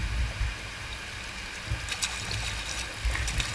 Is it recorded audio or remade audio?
recorded